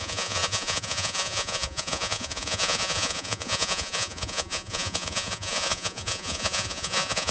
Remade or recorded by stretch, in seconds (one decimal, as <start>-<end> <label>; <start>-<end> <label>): 0.0-7.3 remade

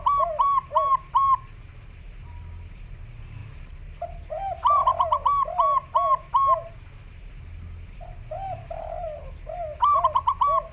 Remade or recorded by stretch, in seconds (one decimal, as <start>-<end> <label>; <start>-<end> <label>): 0.0-10.7 recorded

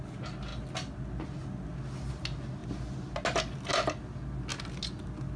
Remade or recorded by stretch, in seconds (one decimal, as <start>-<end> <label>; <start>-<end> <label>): 0.0-5.4 recorded

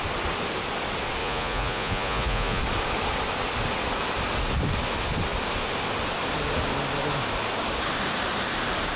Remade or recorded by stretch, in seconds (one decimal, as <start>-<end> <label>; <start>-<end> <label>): 0.0-1.2 recorded; 1.2-2.6 remade; 2.6-9.0 recorded

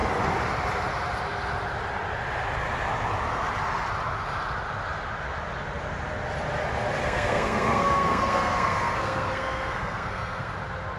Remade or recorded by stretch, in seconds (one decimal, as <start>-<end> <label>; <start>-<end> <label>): 0.0-7.0 recorded; 7.0-10.5 remade; 10.5-11.0 recorded